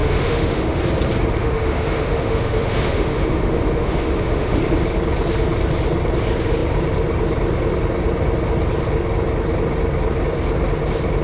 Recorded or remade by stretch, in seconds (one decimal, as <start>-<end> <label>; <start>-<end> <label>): 0.0-0.8 remade; 0.8-1.4 recorded; 1.4-4.6 remade; 4.6-11.2 recorded